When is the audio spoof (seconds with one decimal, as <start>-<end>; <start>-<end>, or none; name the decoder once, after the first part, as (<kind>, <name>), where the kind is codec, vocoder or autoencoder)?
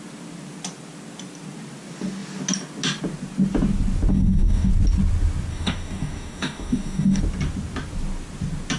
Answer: 4.1-4.7 (codec, DAC); 5.5-7.2